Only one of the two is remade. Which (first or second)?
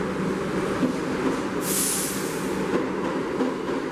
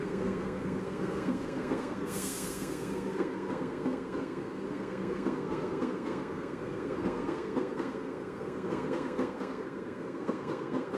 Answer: second